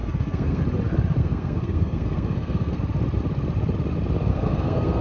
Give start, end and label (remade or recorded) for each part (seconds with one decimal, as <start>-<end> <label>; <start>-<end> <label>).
0.0-0.6 remade; 0.6-1.2 recorded; 1.2-2.8 remade; 2.8-4.3 recorded; 4.3-5.0 remade